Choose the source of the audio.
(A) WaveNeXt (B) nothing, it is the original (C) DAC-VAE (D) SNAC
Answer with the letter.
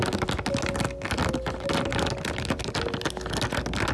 B